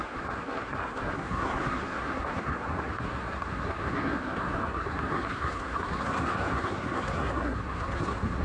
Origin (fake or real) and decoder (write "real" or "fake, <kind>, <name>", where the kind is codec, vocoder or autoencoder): fake, codec, SNAC